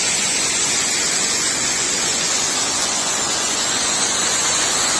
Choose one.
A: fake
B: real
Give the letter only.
A